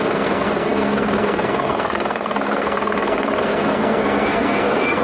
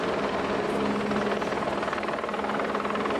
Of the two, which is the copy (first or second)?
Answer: first